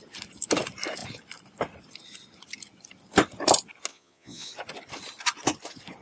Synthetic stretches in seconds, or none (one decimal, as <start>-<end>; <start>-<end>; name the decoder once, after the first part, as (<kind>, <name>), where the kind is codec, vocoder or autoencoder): 3.9-4.5 (vocoder, Vocos)